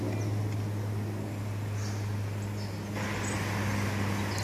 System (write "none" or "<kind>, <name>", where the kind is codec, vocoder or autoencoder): none